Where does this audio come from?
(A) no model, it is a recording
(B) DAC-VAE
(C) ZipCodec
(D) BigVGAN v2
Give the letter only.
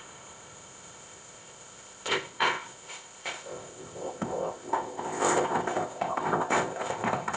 C